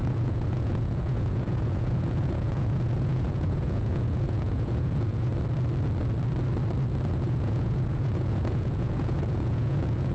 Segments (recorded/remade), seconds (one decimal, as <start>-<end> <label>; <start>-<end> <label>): 0.0-5.3 remade; 5.3-7.1 recorded; 7.1-10.1 remade